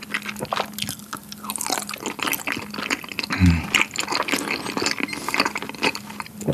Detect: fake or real real